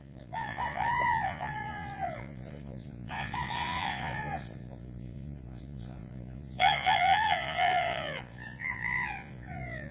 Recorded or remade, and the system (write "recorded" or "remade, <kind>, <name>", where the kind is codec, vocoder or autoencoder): remade, vocoder, Vocos